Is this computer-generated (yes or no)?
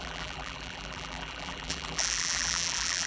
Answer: yes